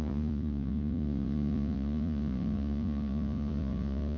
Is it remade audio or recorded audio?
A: remade